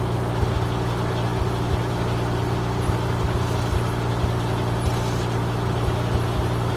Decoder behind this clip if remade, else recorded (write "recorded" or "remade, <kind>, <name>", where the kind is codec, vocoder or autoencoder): recorded